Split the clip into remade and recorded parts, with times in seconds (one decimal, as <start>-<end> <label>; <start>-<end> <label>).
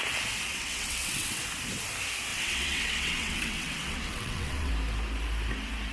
0.0-0.5 recorded; 0.5-1.4 remade; 1.4-2.3 recorded; 2.3-4.7 remade; 4.7-5.9 recorded